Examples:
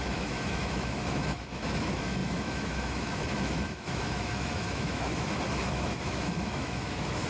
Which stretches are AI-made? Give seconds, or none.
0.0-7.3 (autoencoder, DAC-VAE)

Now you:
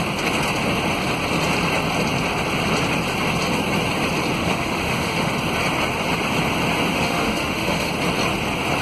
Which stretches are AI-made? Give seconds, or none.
4.4-5.3 (autoencoder, DAC-VAE); 6.9-7.9

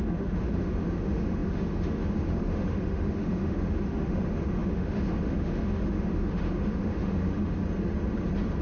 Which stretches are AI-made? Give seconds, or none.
0.0-7.6 (autoencoder, DAC-VAE)